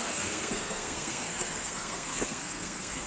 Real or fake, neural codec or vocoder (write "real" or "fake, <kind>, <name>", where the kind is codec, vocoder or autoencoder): fake, codec, SNAC